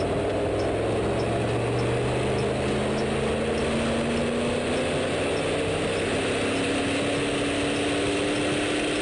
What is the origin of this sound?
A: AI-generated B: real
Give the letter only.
B